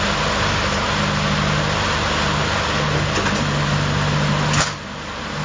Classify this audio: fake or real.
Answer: real